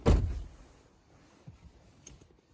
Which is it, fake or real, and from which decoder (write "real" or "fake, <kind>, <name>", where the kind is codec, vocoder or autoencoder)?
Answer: real